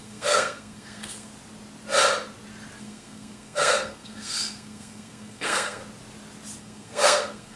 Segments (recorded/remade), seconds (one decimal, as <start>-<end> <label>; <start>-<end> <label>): 0.0-1.3 remade; 1.3-2.8 recorded; 2.8-5.8 remade; 5.8-6.6 recorded; 6.6-7.6 remade